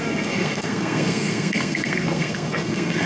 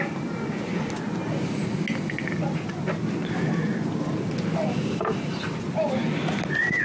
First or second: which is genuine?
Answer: second